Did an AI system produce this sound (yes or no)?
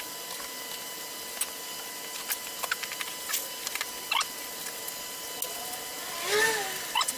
no